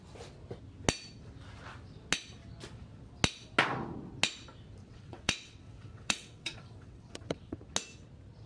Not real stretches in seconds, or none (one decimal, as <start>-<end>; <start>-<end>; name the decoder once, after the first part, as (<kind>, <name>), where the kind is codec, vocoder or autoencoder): 4.8-7.6 (vocoder, WaveNeXt)